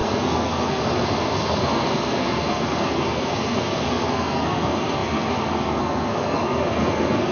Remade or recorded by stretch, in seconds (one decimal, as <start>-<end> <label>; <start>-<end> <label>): 0.0-7.3 remade